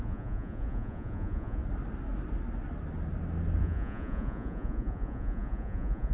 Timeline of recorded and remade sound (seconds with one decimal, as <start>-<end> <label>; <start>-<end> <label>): 0.0-1.6 remade; 1.6-3.6 recorded; 3.6-6.1 remade